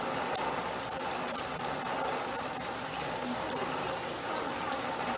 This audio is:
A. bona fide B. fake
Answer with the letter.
A